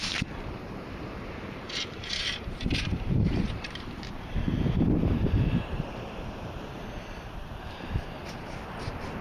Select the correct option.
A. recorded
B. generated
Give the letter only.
B